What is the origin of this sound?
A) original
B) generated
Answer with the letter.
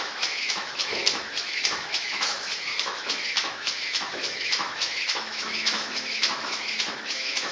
B